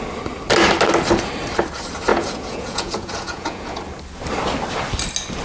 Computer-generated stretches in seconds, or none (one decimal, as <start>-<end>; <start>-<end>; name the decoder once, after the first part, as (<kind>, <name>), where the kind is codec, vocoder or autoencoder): 2.1-3.8 (vocoder, Vocos)